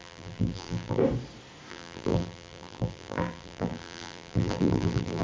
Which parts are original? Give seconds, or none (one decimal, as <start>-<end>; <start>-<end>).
1.0-1.7